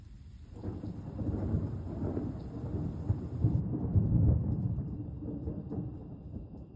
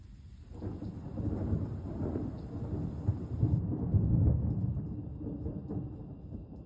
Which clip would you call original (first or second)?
second